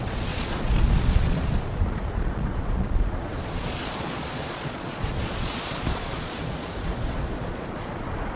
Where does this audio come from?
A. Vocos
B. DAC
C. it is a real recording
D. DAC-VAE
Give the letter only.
A